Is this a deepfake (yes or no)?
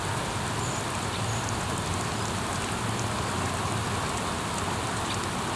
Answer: no